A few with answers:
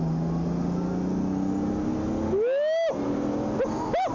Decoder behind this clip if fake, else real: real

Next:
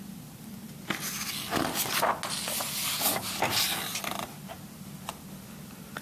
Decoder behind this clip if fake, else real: real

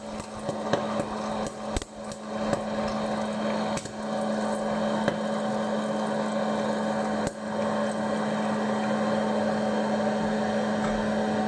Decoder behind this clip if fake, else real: real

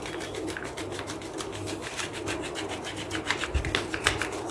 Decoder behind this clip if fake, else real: real